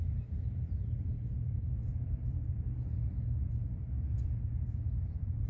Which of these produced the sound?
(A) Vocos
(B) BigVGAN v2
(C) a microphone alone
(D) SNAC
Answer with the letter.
B